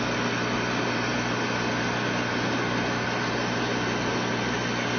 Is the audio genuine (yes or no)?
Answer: yes